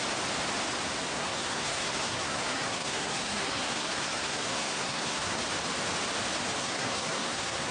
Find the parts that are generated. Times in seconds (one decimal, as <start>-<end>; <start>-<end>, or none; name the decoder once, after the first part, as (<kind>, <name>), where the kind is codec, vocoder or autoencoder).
1.1-5.4 (codec, SNAC); 6.6-7.7